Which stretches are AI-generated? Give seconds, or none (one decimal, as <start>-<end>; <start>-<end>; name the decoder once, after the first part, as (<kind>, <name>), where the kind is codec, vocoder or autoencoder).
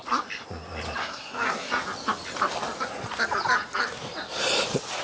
1.0-1.7 (codec, SNAC)